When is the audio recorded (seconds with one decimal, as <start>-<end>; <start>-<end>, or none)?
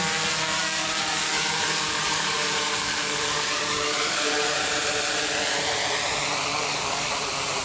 0.0-0.6; 4.7-6.5; 7.1-7.6